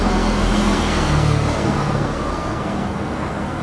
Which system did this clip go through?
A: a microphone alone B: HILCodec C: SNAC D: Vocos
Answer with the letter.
C